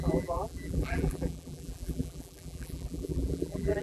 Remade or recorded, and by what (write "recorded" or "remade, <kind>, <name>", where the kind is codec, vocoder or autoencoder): remade, vocoder, BigVGAN v2